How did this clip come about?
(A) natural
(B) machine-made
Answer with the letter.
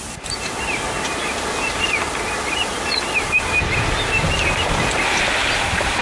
A